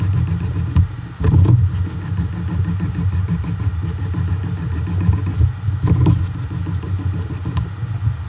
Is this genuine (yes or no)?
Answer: yes